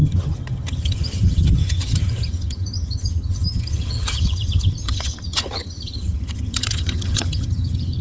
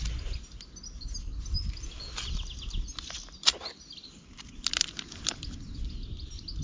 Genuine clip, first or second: second